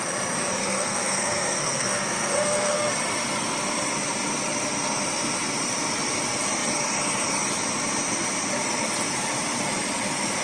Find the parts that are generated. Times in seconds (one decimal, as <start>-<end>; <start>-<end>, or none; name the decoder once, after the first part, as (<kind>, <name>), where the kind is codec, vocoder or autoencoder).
0.6-2.9 (codec, SNAC)